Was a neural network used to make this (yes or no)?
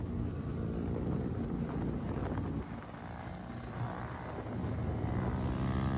no